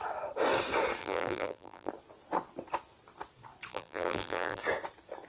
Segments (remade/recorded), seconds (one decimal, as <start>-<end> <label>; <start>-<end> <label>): 0.0-1.0 recorded; 1.0-1.9 remade; 1.9-3.7 recorded; 3.7-4.6 remade; 4.6-5.3 recorded